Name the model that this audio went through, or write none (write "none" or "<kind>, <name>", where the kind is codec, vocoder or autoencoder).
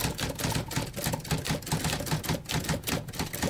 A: none